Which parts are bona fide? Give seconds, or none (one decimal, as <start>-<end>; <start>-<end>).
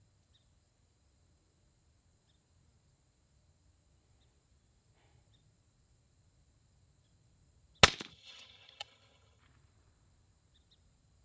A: 0.0-8.1; 9.4-11.2